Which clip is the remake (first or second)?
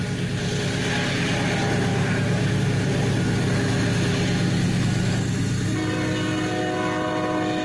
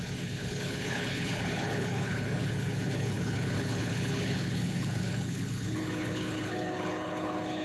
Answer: second